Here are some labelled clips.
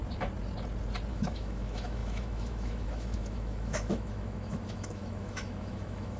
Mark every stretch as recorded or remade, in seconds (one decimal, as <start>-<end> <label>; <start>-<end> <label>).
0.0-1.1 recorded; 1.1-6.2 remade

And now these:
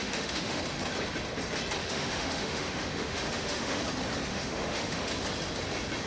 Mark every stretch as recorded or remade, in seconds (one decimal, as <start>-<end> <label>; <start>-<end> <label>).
0.0-0.6 remade; 0.6-1.8 recorded; 1.8-3.8 remade; 3.8-4.3 recorded; 4.3-5.1 remade; 5.1-6.1 recorded

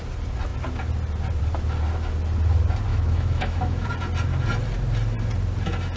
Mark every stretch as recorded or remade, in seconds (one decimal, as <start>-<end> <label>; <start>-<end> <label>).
0.0-2.9 recorded; 2.9-3.9 remade; 3.9-6.0 recorded

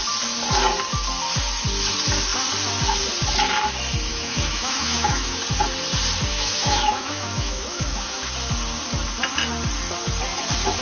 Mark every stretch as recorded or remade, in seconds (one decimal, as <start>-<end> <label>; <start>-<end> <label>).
0.0-4.1 recorded; 4.1-5.4 remade; 5.4-6.3 recorded; 6.3-8.3 remade; 8.3-10.8 recorded

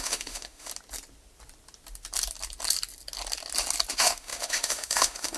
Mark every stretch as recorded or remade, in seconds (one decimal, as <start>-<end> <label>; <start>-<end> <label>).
0.0-0.7 remade; 0.7-3.9 recorded; 3.9-5.4 remade

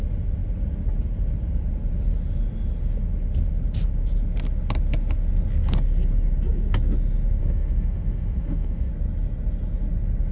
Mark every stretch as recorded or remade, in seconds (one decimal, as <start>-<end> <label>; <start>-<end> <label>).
0.0-7.4 recorded; 7.4-8.9 remade; 8.9-10.3 recorded

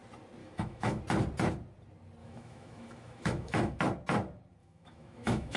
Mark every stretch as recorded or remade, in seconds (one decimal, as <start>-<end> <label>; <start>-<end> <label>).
0.0-0.4 recorded; 0.4-1.0 remade; 1.0-2.2 recorded; 2.2-3.8 remade; 3.8-4.6 recorded; 4.6-5.6 remade

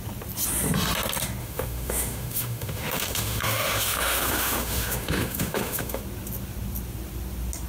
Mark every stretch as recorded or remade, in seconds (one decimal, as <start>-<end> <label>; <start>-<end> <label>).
0.0-1.4 recorded; 1.4-6.0 remade; 6.0-7.7 recorded